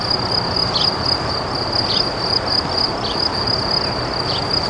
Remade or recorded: recorded